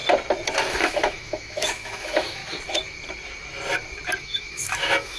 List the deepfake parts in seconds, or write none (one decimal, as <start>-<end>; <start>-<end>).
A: 0.7-2.4; 4.2-5.2

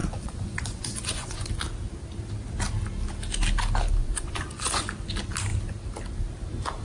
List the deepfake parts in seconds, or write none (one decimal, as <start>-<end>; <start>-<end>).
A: 0.0-1.5; 4.0-4.9